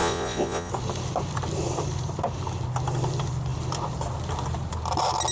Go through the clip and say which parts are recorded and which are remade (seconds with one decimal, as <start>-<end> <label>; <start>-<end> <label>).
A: 0.0-0.7 remade; 0.7-5.3 recorded